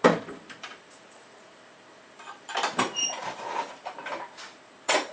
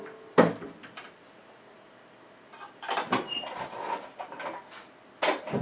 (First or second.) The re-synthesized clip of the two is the first